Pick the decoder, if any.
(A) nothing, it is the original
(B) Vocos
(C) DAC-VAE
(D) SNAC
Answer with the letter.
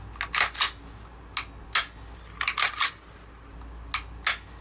A